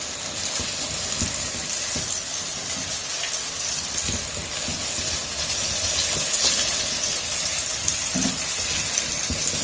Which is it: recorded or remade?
recorded